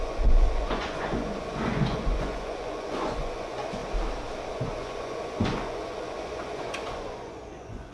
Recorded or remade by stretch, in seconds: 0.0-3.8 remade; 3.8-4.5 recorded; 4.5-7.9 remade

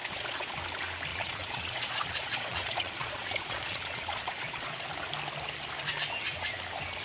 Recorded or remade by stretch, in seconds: 0.0-0.5 remade; 0.5-1.1 recorded; 1.1-4.9 remade; 4.9-7.0 recorded